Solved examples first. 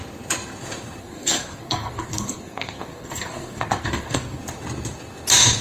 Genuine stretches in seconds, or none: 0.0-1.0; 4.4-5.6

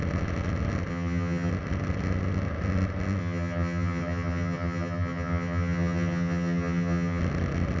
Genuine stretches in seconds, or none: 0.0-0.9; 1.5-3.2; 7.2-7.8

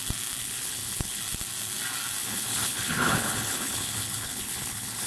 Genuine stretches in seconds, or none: 0.0-0.4; 1.2-2.2